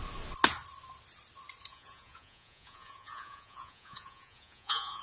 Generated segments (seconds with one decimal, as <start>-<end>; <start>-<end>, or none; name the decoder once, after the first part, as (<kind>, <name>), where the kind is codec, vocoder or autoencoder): 1.7-5.0 (vocoder, Vocos)